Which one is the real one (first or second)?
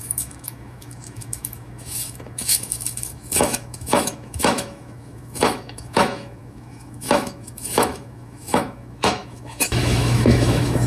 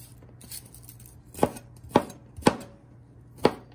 second